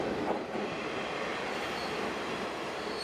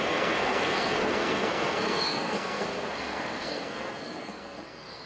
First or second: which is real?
first